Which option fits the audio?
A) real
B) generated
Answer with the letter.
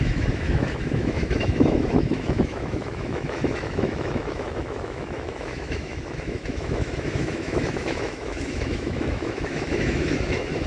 B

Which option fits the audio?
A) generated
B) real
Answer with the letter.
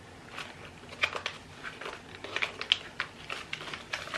B